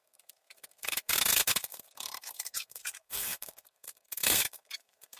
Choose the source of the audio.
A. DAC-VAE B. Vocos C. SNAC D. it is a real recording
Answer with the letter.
C